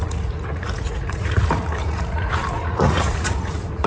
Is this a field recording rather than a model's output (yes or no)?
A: no